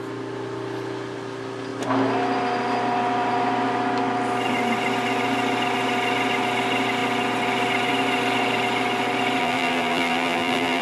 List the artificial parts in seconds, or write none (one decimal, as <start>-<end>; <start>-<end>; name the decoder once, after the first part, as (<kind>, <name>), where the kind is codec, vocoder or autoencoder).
9.4-10.8 (vocoder, BigVGAN v2)